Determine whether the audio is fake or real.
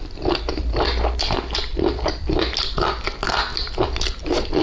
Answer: real